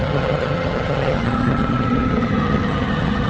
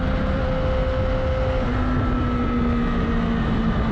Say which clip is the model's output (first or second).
first